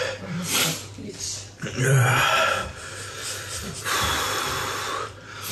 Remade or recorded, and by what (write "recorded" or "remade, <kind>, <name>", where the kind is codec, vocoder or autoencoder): remade, vocoder, BigVGAN v2